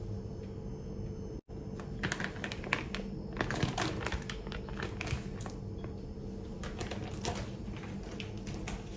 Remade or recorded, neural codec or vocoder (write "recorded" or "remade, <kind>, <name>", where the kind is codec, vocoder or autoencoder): recorded